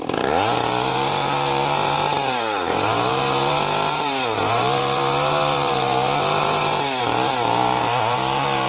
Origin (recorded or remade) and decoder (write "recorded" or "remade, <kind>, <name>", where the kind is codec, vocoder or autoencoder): remade, vocoder, BigVGAN v2